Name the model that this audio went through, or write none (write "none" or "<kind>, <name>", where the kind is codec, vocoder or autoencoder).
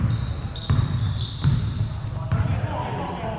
none